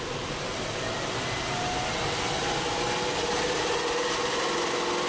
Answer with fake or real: real